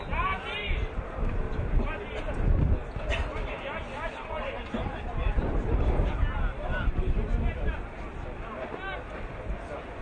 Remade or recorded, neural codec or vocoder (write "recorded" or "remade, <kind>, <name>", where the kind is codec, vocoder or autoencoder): recorded